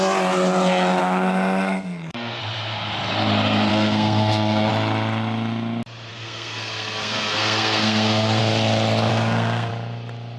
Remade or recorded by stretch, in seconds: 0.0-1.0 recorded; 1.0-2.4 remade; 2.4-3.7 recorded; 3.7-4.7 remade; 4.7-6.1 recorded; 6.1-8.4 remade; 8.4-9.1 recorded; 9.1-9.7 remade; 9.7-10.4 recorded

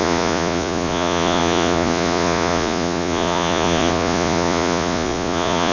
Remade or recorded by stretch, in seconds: 0.0-5.7 remade

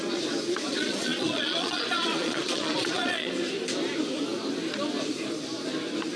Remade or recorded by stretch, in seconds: 0.0-0.7 recorded; 0.7-3.3 remade; 3.3-6.2 recorded

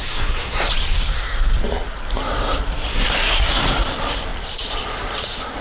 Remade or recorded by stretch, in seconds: 0.0-0.7 remade; 0.7-2.9 recorded; 2.9-3.6 remade; 3.6-5.6 recorded

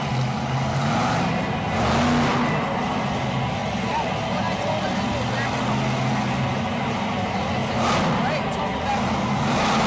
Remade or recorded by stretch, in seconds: 0.0-9.9 recorded

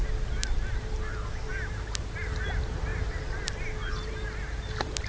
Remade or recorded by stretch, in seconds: 0.0-5.1 recorded

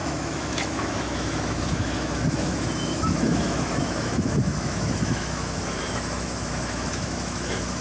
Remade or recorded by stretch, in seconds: 0.0-7.8 remade

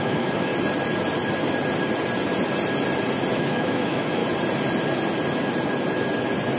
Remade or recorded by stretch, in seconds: 0.0-0.5 remade; 0.5-3.3 recorded; 3.3-4.2 remade; 4.2-6.6 recorded